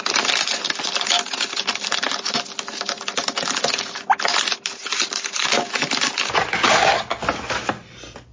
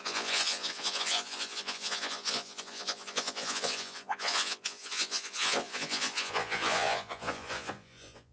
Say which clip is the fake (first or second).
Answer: second